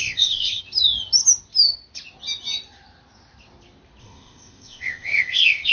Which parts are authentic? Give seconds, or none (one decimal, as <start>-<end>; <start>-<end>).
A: 0.6-4.0